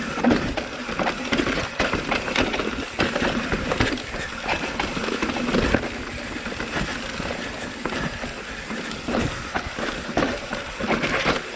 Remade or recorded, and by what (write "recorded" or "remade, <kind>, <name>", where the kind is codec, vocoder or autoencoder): recorded